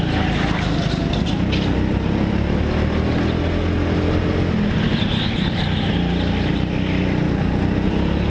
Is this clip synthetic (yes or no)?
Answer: no